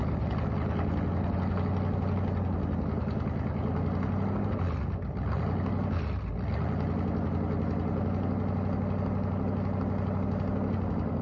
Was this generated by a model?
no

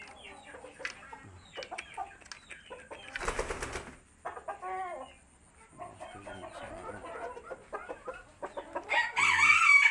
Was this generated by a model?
no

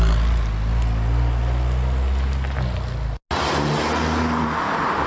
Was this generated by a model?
no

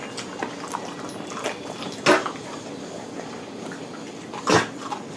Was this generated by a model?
no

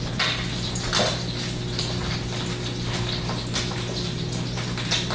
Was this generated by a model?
no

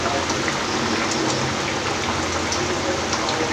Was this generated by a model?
no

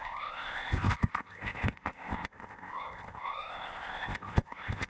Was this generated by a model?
yes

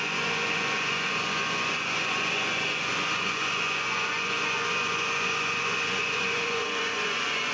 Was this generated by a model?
yes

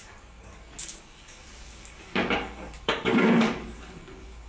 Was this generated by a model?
yes